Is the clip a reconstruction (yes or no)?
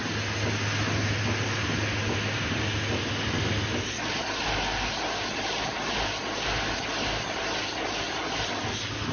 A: no